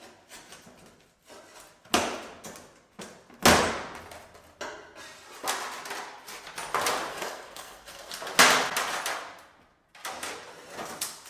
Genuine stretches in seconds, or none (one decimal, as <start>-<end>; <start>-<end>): 0.0-7.1; 8.1-11.3